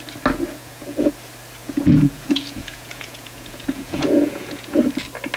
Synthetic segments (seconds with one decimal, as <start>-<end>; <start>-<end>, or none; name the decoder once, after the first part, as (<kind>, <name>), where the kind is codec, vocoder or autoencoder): 0.6-1.1 (vocoder, Vocos); 1.6-4.8